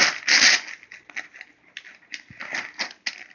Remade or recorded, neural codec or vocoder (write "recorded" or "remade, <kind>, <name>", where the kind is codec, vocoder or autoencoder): recorded